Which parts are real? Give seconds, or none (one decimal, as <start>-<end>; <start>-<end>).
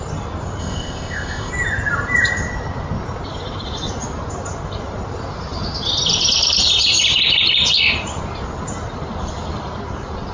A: 0.0-0.6; 1.5-10.3